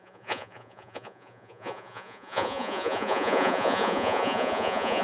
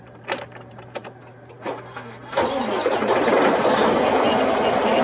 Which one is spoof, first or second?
first